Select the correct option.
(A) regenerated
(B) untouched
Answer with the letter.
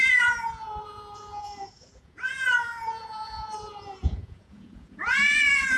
A